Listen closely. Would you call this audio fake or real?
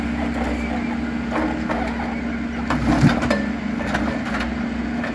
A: real